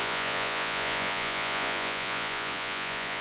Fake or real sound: fake